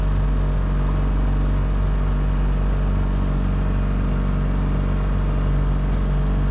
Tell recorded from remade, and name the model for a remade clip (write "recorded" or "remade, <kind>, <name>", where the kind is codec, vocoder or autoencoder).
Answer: recorded